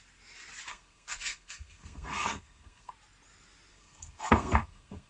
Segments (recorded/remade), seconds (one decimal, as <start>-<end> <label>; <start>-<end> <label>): 0.0-0.7 recorded; 0.7-2.9 remade; 2.9-3.7 recorded; 3.7-5.1 remade